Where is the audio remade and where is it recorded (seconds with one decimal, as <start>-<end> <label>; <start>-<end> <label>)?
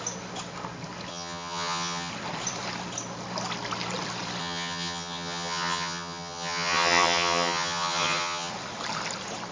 0.0-1.1 recorded; 1.1-2.1 remade; 2.1-4.4 recorded; 4.4-8.5 remade; 8.5-9.5 recorded